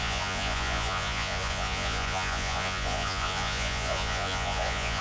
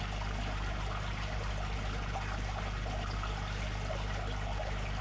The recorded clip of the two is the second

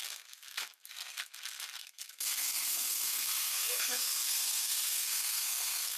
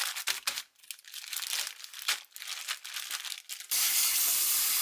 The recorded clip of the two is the second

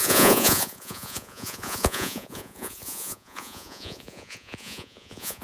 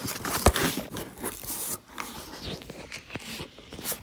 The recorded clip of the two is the second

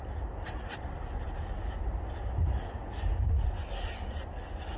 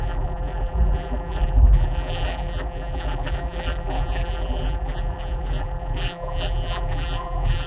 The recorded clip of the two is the first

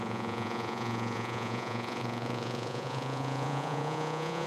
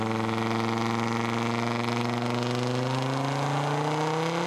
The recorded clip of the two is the second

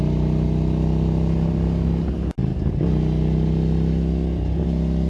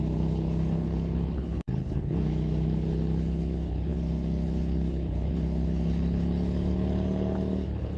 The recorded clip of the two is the first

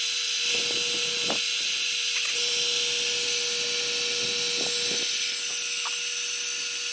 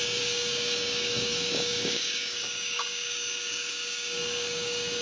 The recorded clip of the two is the first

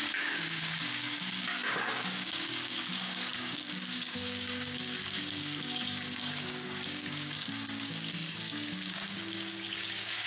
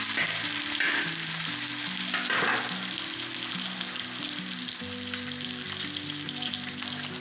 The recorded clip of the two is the second